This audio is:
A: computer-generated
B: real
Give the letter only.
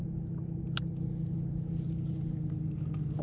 B